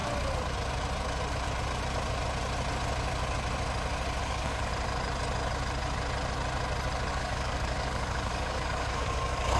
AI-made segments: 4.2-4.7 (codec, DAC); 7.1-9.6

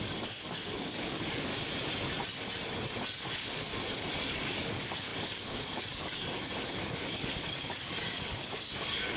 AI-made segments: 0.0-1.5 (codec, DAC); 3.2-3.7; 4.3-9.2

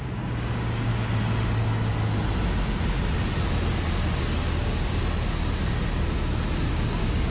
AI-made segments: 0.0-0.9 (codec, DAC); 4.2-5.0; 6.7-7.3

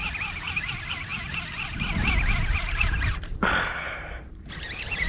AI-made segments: none